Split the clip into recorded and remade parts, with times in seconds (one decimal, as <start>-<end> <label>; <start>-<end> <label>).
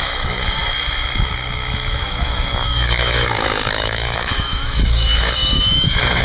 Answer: 0.0-6.2 remade